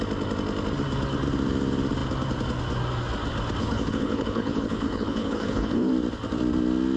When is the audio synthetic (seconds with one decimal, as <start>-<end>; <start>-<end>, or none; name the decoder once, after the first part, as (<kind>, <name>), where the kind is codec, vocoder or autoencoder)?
3.6-5.9 (codec, HILCodec)